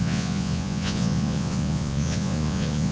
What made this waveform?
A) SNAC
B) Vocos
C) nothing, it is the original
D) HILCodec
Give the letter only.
B